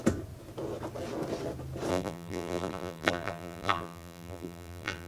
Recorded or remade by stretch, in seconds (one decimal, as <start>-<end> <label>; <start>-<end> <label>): 0.0-1.9 recorded; 1.9-5.1 remade